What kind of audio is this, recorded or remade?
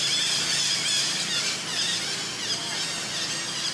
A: recorded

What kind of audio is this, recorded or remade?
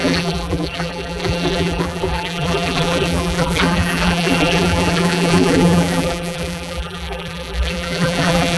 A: remade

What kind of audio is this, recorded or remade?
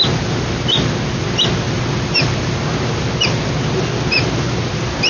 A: recorded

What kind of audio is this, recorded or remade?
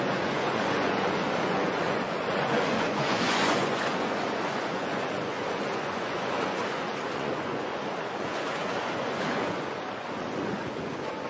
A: remade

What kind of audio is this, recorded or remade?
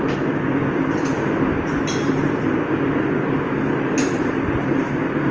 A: recorded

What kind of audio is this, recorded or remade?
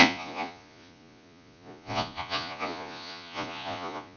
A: remade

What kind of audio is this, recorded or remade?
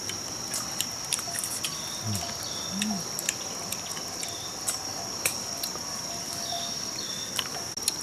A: recorded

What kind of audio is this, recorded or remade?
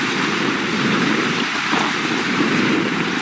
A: remade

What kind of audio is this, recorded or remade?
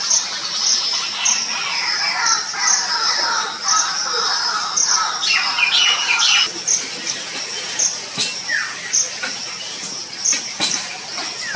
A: recorded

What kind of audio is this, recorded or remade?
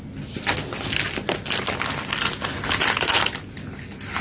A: recorded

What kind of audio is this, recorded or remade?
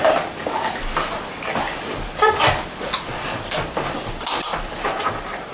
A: recorded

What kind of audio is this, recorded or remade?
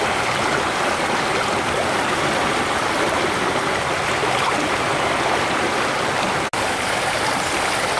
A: recorded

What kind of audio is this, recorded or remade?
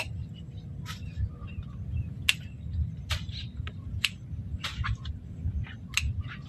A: recorded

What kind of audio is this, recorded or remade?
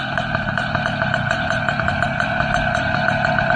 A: recorded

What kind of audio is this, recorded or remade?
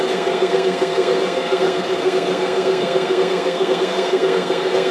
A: remade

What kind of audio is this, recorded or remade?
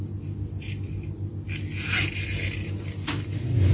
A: recorded